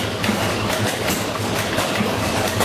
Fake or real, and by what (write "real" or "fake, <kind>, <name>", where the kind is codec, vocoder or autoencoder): fake, codec, DAC